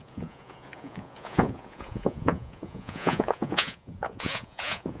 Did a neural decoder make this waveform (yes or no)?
yes